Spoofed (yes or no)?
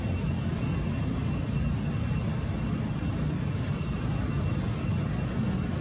no